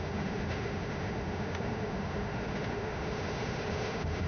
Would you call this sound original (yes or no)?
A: no